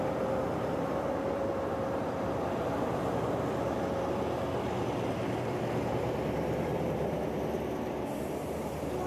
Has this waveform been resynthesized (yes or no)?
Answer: yes